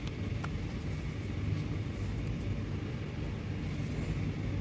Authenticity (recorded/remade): recorded